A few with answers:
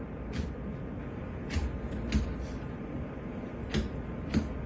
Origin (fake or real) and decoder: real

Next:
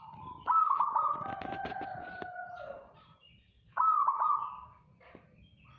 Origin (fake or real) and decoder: real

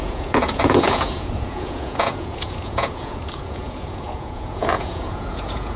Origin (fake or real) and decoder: fake, vocoder, Vocos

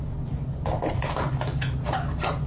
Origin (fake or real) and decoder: real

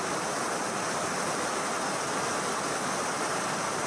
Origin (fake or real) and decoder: real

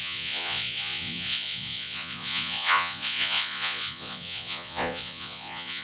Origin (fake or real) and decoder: fake, vocoder, Vocos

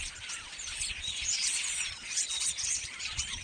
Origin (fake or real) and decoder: fake, vocoder, Vocos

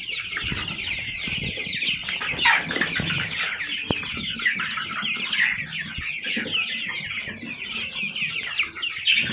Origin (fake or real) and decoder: real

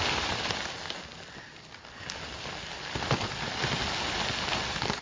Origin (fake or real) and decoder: real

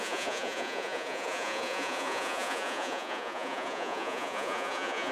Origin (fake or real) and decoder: fake, vocoder, Vocos